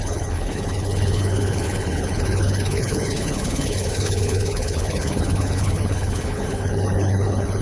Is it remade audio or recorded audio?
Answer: remade